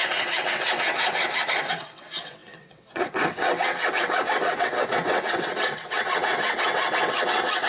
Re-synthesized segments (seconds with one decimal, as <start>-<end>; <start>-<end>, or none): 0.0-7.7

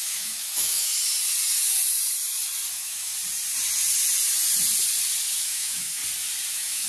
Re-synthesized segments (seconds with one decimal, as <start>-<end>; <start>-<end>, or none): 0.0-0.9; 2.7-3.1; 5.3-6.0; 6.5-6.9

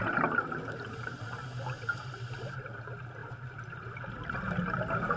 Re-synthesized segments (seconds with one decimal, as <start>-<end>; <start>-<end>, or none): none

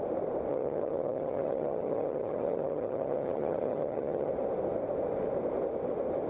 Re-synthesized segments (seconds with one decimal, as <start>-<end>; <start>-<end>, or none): 0.5-4.3

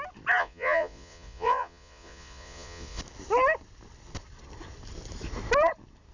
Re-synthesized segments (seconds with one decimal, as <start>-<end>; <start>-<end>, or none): 0.4-3.0

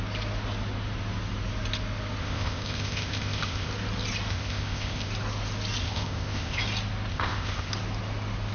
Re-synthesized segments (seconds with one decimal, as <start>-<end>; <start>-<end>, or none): 2.2-3.7; 4.3-5.1; 5.8-6.6; 7.1-7.7

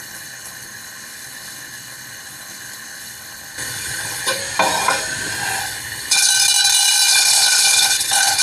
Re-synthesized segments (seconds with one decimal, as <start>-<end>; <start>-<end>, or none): 0.0-4.4; 5.6-6.3; 7.1-8.4